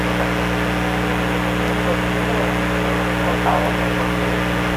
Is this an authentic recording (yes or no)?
yes